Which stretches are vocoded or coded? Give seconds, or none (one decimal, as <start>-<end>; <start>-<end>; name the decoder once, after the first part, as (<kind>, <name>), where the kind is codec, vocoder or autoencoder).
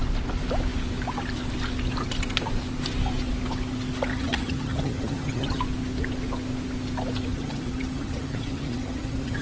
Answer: 4.1-5.6 (vocoder, HiFi-GAN); 7.3-9.4